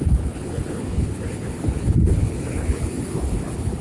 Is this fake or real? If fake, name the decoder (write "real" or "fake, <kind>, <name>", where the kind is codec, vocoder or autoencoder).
fake, codec, HILCodec